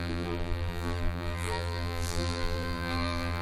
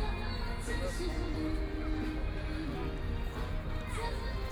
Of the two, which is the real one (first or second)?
second